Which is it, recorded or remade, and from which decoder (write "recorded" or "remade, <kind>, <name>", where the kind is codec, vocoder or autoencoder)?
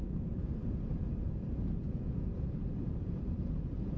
remade, vocoder, Vocos